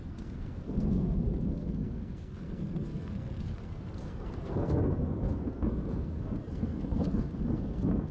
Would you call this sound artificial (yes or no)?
yes